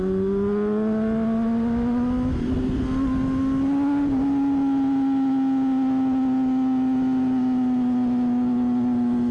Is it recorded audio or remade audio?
recorded